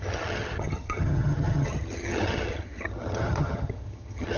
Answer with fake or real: fake